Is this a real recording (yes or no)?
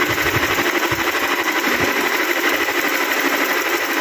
yes